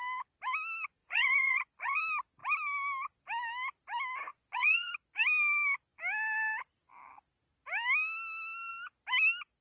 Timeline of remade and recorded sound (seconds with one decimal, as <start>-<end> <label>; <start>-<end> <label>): 0.0-1.0 recorded; 1.0-2.0 remade; 2.0-4.3 recorded; 4.3-4.9 remade; 4.9-9.6 recorded

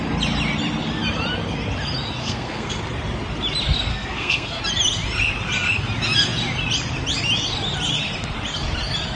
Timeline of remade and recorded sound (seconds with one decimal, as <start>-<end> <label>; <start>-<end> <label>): 0.0-2.2 recorded; 2.2-2.8 remade; 2.8-3.9 recorded; 3.9-4.6 remade; 4.6-9.2 recorded

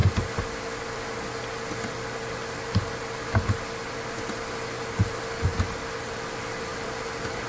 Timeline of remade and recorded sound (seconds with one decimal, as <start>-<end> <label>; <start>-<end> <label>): 0.0-7.5 recorded

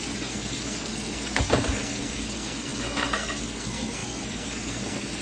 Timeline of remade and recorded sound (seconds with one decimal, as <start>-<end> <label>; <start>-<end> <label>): 0.0-5.2 remade

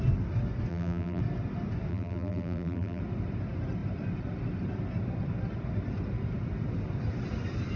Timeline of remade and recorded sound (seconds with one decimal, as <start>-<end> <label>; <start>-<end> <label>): 0.0-0.7 recorded; 0.7-1.2 remade; 1.2-1.9 recorded; 1.9-3.0 remade; 3.0-7.8 recorded

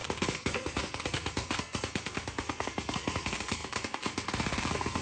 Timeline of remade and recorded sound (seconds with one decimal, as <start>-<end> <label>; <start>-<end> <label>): 0.0-5.0 remade